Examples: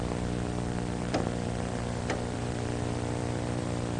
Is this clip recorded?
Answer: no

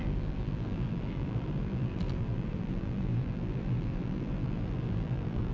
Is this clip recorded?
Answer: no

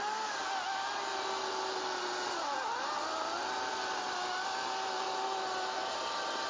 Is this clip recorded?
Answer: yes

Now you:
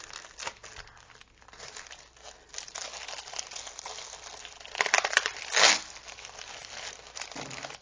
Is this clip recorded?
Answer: yes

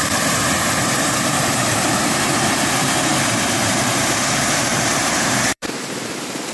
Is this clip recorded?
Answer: no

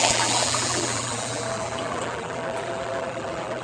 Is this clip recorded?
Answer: no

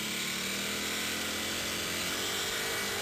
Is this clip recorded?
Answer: yes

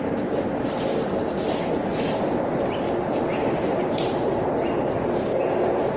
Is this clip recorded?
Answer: yes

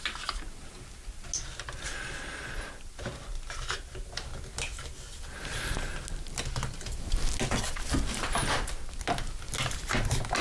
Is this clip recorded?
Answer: yes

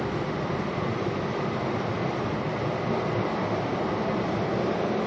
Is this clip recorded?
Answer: no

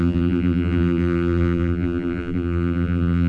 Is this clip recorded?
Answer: no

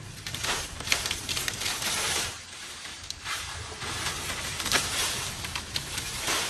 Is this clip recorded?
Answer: no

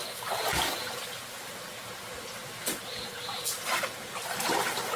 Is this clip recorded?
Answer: yes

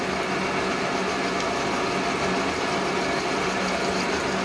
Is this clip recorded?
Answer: yes